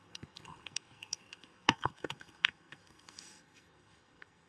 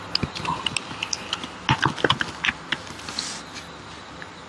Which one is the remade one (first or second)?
first